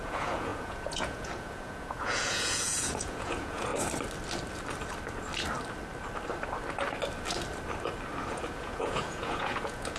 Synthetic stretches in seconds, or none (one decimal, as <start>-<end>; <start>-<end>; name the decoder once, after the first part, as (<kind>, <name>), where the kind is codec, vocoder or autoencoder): 0.0-3.7 (vocoder, Vocos); 8.3-10.0